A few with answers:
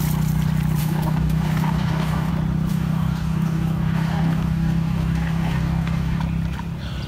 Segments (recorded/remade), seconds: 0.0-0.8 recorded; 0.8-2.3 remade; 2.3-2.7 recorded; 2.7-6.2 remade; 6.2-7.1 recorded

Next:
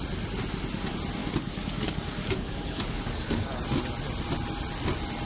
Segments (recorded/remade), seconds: 0.0-1.2 recorded; 1.2-3.6 remade; 3.6-5.3 recorded

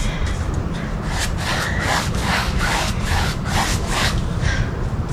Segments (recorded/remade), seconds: 0.0-1.5 recorded; 1.5-2.9 remade; 2.9-3.7 recorded; 3.7-4.6 remade; 4.6-5.1 recorded

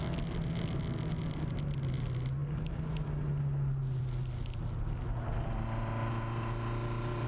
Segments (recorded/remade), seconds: 0.0-7.3 recorded

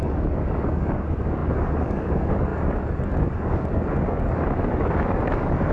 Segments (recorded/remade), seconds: 0.0-5.7 remade